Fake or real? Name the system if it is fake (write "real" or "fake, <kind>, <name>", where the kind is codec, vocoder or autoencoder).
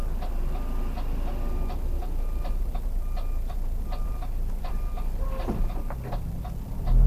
fake, vocoder, BigVGAN v2